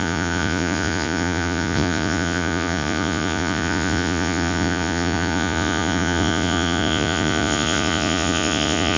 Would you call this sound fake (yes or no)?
yes